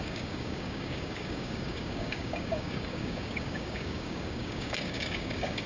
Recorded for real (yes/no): no